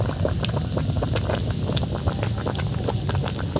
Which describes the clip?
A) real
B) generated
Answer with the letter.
A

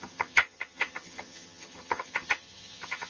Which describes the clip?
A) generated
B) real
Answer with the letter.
A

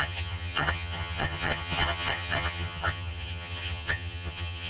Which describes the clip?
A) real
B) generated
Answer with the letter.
B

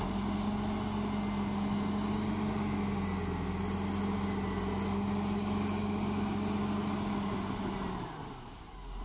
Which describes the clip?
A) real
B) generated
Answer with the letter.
A